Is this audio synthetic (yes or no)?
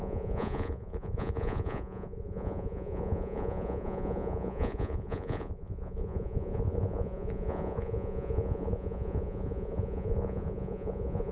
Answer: yes